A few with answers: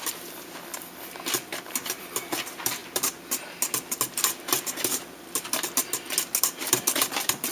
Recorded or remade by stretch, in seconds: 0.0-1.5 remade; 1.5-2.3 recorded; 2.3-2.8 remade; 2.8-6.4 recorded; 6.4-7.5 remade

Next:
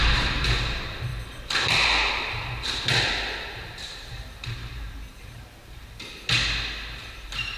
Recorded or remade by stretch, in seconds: 0.0-1.1 remade; 1.1-2.1 recorded; 2.1-5.8 remade; 5.8-7.0 recorded; 7.0-7.6 remade

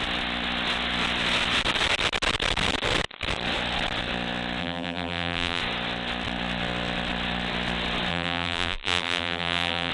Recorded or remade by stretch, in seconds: 0.0-4.6 recorded; 4.6-5.6 remade; 5.6-8.1 recorded; 8.1-9.9 remade